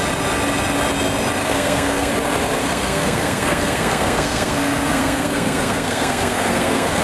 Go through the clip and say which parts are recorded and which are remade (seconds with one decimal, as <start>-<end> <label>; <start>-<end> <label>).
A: 0.0-1.4 recorded; 1.4-2.1 remade; 2.1-2.6 recorded; 2.6-7.0 remade